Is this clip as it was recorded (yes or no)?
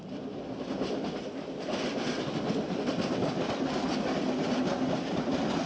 yes